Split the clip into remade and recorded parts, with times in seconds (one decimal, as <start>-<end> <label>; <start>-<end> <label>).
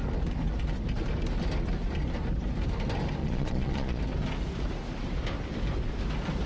0.0-3.2 recorded; 3.2-4.0 remade; 4.0-6.5 recorded